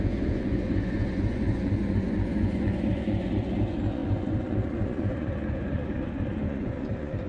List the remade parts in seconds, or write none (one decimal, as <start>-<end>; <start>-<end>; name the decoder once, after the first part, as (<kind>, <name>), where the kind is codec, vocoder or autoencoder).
0.0-7.3 (vocoder, Vocos)

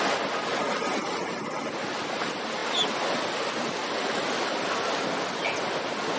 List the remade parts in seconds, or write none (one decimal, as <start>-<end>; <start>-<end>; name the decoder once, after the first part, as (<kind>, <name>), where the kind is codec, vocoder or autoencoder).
none

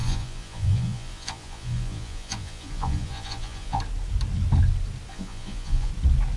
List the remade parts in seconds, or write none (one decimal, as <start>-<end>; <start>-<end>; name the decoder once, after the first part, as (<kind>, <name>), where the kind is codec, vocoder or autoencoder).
0.0-3.8 (vocoder, Vocos); 5.1-5.9

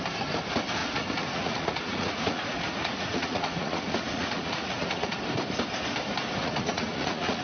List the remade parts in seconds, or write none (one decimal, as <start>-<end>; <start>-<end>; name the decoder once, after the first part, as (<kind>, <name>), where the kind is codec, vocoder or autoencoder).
0.8-5.2 (vocoder, Vocos); 6.4-7.4

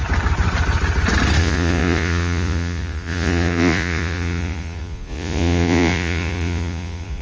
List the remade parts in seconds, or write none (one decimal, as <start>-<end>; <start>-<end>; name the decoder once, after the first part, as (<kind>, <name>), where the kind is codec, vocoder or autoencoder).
1.4-7.2 (vocoder, Vocos)

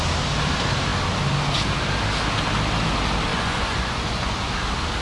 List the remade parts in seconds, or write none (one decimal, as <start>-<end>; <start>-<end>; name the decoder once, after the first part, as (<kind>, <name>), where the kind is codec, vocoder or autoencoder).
3.3-4.5 (vocoder, Vocos)

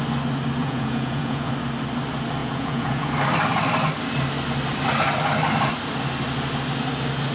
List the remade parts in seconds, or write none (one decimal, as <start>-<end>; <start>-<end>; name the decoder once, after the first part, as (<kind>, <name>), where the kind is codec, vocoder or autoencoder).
0.6-1.5 (vocoder, Vocos); 2.4-3.1